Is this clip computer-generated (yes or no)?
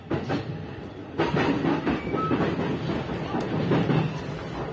no